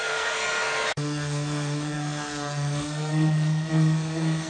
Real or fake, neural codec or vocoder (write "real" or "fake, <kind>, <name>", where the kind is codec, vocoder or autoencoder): fake, codec, SNAC